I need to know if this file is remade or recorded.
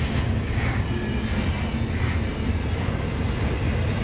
recorded